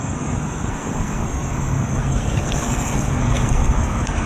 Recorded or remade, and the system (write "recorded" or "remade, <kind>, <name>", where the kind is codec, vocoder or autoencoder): remade, codec, SNAC